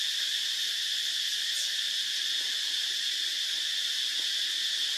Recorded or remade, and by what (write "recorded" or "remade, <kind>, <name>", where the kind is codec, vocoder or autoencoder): recorded